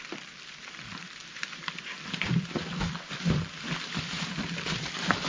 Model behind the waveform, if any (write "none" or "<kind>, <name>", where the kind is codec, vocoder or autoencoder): vocoder, BigVGAN v2